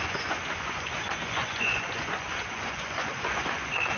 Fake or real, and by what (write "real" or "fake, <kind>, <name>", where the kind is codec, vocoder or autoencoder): fake, vocoder, Vocos